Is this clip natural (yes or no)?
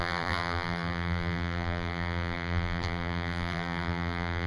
no